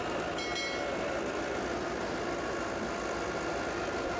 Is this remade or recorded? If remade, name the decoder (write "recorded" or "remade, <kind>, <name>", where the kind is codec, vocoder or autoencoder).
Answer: recorded